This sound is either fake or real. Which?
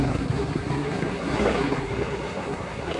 fake